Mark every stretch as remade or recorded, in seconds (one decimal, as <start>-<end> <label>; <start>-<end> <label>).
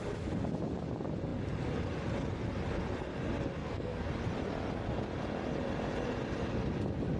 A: 0.0-3.6 recorded; 3.6-4.1 remade; 4.1-7.2 recorded